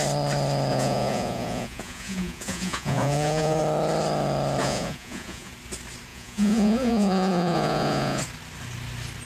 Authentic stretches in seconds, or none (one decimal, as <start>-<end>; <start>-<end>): 0.0-0.7; 3.6-4.6; 5.5-6.1; 8.2-9.3